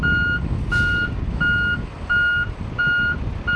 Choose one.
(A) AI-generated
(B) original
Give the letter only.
B